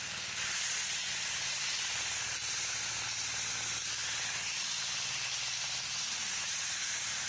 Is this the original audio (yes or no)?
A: yes